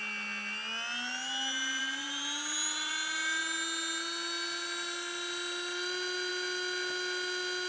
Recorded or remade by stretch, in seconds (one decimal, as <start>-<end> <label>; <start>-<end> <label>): 0.0-1.8 recorded; 1.8-2.9 remade; 2.9-7.7 recorded